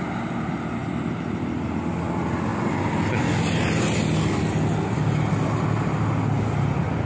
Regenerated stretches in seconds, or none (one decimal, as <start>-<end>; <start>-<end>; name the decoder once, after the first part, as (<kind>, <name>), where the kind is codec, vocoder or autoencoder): none

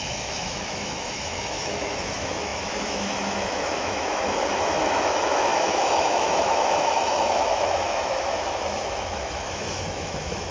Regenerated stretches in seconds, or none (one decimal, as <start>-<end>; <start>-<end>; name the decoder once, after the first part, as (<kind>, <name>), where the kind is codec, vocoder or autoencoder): 0.0-10.5 (autoencoder, DAC-VAE)

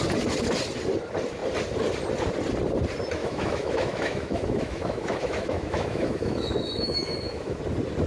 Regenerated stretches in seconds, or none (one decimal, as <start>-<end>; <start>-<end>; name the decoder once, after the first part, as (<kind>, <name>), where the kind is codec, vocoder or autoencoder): 3.2-7.6 (autoencoder, DAC-VAE)